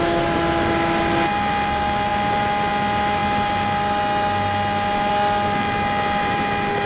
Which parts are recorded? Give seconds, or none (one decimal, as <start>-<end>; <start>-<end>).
0.0-6.9

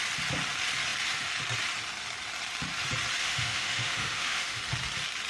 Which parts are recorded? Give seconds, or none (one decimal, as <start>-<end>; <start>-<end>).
0.0-3.2; 4.6-5.3

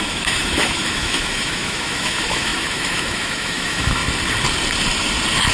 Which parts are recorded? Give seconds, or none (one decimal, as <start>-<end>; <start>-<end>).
4.0-5.5

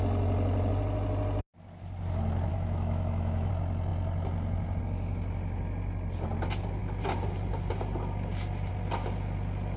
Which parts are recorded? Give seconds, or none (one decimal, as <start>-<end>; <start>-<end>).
0.0-2.5; 3.5-9.8

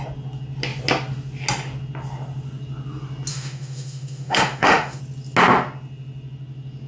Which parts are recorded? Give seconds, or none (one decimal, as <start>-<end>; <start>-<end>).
0.0-3.3; 5.0-6.9

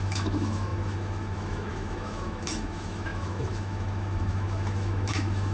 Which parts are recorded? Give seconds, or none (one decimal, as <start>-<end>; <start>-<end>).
none